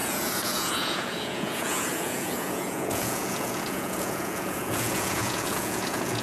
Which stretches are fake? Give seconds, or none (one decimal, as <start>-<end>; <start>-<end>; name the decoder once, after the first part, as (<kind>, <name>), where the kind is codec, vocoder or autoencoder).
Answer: 0.0-6.2 (vocoder, Vocos)

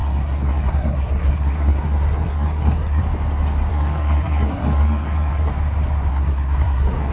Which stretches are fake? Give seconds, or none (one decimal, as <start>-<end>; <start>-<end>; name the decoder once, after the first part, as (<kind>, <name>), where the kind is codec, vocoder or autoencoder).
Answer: 0.0-3.0 (codec, SNAC); 3.7-5.5; 6.1-7.1